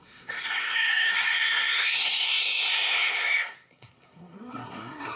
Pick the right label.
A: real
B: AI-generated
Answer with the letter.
B